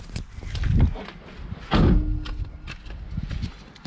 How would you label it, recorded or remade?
recorded